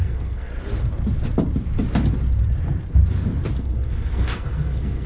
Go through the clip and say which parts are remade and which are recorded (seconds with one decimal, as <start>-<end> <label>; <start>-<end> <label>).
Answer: 0.0-0.5 remade; 0.5-3.6 recorded; 3.6-5.1 remade